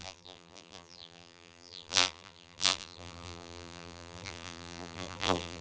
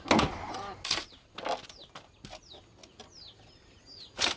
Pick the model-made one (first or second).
first